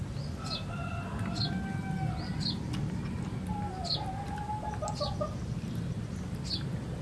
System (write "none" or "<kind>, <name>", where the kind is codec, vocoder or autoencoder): none